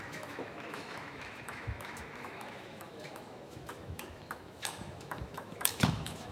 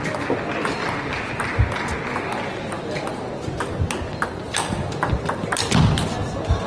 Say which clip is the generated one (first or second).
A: first